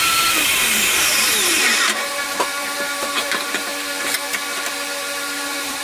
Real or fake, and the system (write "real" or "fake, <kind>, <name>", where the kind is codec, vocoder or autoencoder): fake, vocoder, BigVGAN v2